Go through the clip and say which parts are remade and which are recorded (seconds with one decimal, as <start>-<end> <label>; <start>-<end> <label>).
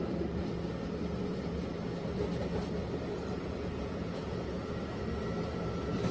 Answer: 0.0-3.3 recorded; 3.3-4.8 remade; 4.8-6.1 recorded